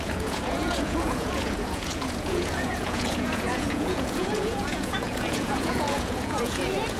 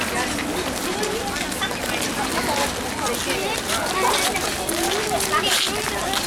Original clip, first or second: second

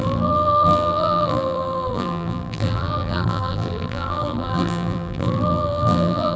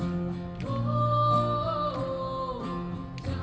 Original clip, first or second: second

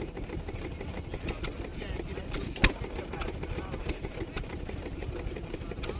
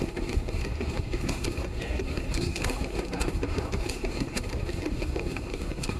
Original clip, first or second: first